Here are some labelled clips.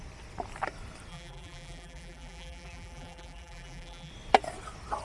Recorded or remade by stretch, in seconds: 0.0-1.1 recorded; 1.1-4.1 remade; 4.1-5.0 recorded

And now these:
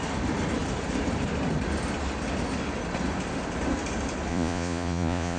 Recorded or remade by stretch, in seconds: 0.0-4.3 recorded; 4.3-5.4 remade

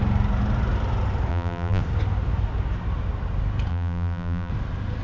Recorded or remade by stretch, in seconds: 0.0-1.3 recorded; 1.3-1.8 remade; 1.8-3.7 recorded; 3.7-4.5 remade; 4.5-5.0 recorded

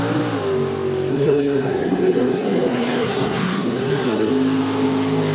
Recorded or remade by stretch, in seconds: 0.0-1.1 recorded; 1.1-4.3 remade; 4.3-5.3 recorded

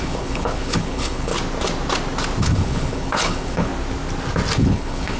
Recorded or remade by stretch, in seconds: 0.0-1.3 remade; 1.3-2.4 recorded; 2.4-3.7 remade; 3.7-4.6 recorded; 4.6-5.2 remade